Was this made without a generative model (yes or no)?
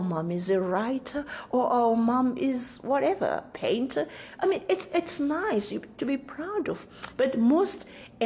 yes